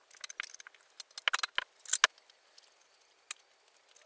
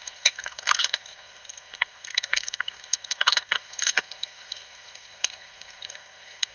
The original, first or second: first